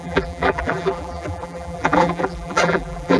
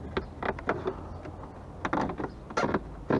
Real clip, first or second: second